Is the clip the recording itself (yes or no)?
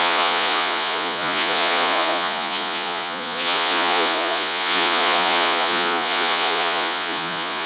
no